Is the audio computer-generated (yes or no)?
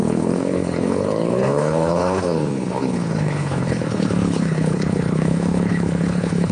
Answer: yes